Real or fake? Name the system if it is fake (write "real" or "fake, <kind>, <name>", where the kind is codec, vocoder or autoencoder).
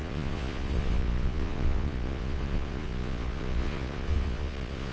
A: fake, vocoder, Vocos